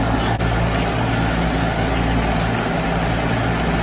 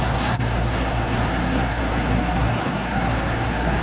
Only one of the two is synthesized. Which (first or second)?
second